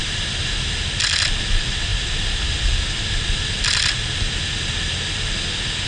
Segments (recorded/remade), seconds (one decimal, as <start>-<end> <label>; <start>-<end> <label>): 0.0-5.9 recorded